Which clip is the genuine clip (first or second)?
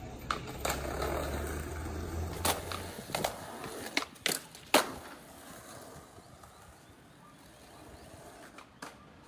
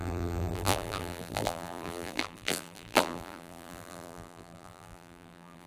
first